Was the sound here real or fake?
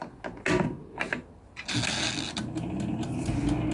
real